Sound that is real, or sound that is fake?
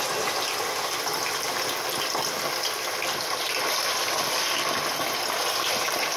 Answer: real